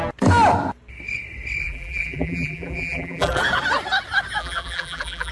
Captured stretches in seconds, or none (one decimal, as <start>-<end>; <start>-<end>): 0.0-1.6; 3.4-4.4